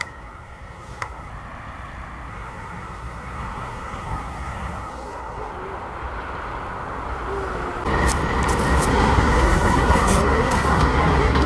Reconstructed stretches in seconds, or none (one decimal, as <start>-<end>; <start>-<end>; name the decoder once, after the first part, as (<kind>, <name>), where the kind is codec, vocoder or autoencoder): 0.0-1.3 (codec, SNAC); 2.3-5.5; 8.9-11.5